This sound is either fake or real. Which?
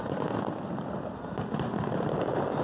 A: real